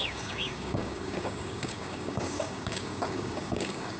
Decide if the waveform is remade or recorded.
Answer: remade